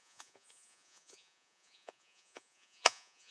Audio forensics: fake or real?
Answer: fake